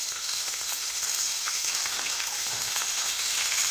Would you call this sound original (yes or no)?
no